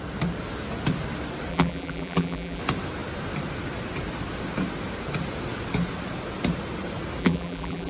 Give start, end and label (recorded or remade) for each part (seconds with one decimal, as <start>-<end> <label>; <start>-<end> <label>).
0.0-1.5 recorded; 1.5-2.6 remade; 2.6-7.2 recorded; 7.2-7.9 remade